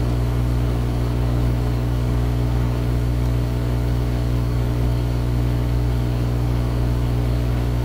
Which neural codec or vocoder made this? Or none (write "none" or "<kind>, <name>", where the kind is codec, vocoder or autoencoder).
codec, DAC